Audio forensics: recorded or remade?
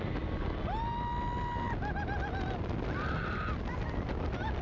recorded